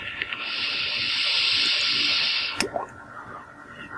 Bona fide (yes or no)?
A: yes